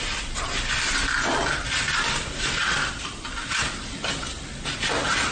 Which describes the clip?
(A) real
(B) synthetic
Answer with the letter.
A